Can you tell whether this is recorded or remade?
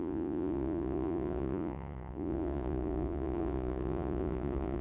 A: remade